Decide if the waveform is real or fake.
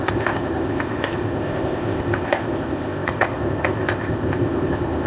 fake